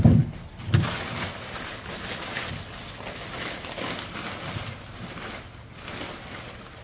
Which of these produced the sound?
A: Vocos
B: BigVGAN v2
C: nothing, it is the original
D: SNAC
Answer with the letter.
C